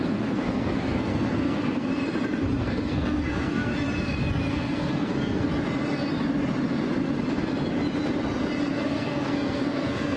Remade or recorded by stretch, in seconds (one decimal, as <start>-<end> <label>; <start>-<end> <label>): 0.0-1.9 remade; 1.9-2.6 recorded; 2.6-3.7 remade; 3.7-4.5 recorded; 4.5-5.5 remade; 5.5-8.7 recorded; 8.7-10.2 remade